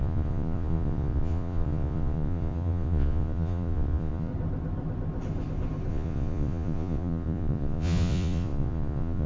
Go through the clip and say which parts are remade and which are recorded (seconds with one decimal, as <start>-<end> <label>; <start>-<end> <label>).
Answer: 0.0-4.3 remade; 4.3-5.9 recorded; 5.9-9.3 remade